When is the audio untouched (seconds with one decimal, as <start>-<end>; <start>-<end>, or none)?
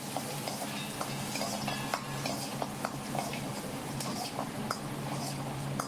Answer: 0.0-2.5; 5.0-5.9